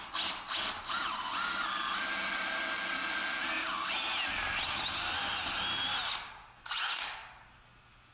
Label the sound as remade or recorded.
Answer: recorded